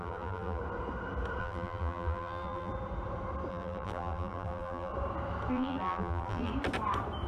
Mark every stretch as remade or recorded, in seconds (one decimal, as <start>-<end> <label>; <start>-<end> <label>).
0.0-0.6 remade; 0.6-1.4 recorded; 1.4-2.7 remade; 2.7-3.5 recorded; 3.5-4.9 remade; 4.9-5.5 recorded; 5.5-6.5 remade; 6.5-7.3 recorded